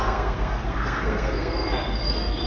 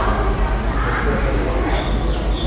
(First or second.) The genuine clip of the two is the second